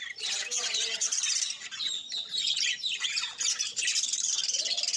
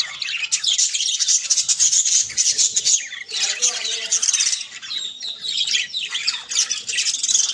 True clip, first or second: second